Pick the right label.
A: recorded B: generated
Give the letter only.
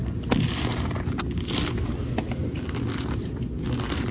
A